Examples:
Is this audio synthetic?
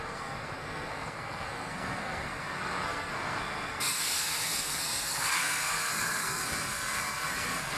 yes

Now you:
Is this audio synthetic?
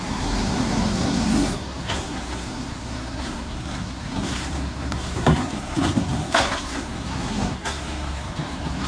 yes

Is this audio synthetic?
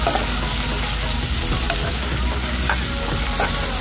no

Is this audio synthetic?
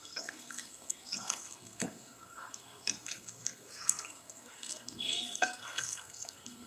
yes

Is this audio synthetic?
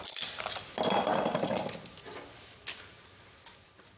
no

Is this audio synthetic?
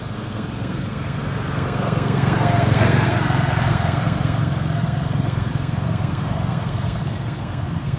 yes